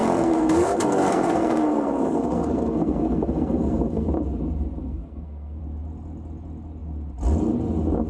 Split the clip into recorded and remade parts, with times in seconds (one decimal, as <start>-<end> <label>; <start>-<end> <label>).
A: 0.0-4.1 remade; 4.1-4.8 recorded; 4.8-5.6 remade; 5.6-8.1 recorded